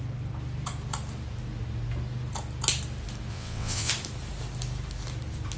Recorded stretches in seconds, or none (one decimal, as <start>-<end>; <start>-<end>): 0.0-3.3; 3.9-5.6